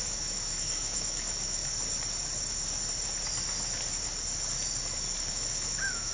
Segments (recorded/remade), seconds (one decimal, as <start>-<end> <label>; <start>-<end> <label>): 0.0-1.6 remade; 1.6-5.3 recorded; 5.3-6.1 remade